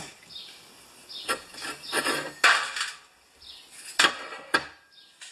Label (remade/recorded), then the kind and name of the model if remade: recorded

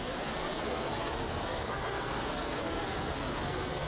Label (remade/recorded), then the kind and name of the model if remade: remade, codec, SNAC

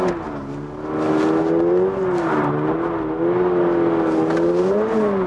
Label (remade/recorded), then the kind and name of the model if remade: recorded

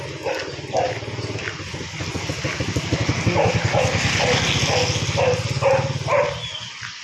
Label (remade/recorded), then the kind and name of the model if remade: recorded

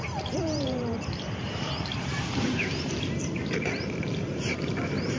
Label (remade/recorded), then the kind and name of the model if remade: remade, vocoder, BigVGAN v2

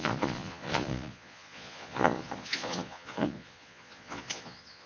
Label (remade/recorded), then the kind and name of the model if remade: remade, vocoder, Vocos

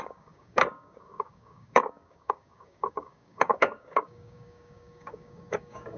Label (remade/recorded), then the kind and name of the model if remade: remade, codec, DAC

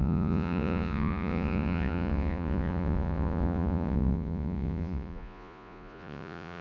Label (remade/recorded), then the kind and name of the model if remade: remade, vocoder, Vocos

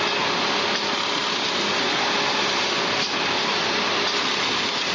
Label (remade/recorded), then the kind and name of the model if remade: recorded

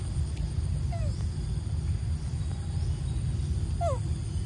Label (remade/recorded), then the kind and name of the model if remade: recorded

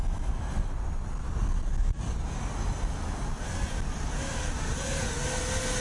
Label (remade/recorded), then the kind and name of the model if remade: recorded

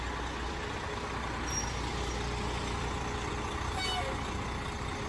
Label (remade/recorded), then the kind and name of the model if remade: recorded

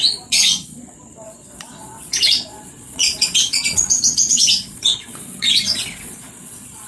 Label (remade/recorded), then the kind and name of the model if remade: remade, vocoder, Vocos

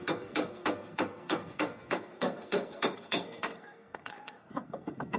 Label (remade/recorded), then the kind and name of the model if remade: remade, codec, SNAC